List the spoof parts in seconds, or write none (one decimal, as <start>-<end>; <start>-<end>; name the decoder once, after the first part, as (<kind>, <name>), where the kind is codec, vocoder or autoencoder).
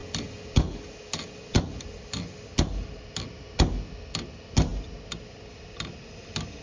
none